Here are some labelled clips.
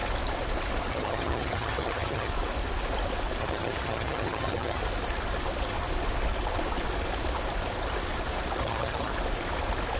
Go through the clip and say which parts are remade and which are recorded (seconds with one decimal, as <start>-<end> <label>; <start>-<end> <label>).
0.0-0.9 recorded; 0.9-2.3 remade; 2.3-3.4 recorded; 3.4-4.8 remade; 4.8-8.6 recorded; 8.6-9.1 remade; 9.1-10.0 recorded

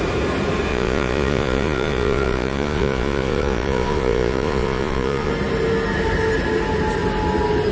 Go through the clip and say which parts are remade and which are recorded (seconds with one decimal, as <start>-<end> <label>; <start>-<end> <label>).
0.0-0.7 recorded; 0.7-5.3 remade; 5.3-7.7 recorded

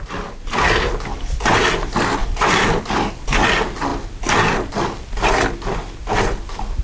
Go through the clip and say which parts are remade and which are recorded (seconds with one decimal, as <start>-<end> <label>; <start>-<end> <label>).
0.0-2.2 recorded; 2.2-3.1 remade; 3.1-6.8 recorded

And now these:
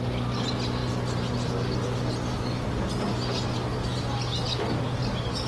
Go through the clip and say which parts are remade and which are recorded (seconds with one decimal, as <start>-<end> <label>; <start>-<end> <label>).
0.0-5.5 recorded

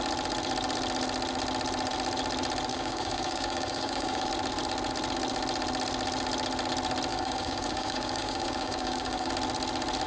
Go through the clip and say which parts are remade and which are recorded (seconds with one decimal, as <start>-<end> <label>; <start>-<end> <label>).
0.0-2.7 recorded; 2.7-4.3 remade; 4.3-7.1 recorded; 7.1-9.3 remade; 9.3-10.1 recorded